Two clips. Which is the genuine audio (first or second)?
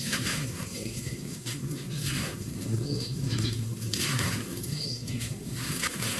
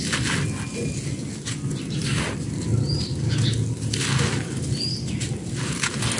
second